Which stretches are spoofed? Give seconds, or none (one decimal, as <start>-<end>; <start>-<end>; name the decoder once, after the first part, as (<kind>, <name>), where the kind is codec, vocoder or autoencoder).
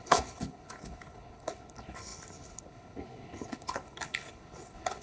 0.0-5.0 (codec, HILCodec)